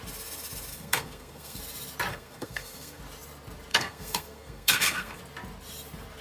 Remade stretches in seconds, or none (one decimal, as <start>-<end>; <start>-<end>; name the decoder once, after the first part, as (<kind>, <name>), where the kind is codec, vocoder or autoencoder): 0.7-1.6 (codec, SNAC); 2.1-3.0; 3.7-5.2